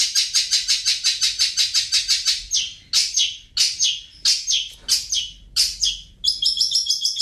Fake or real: real